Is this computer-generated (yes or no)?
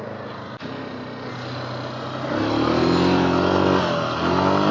no